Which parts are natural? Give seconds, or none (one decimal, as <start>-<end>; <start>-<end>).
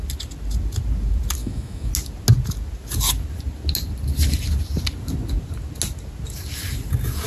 0.0-1.4; 1.9-7.3